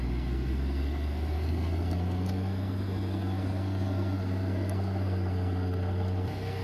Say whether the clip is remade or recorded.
remade